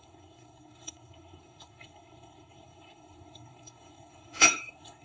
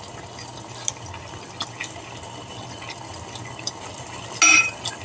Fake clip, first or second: first